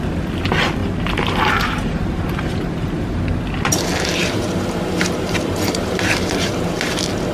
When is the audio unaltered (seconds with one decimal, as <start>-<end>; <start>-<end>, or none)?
0.0-0.8; 3.2-4.2; 6.8-7.3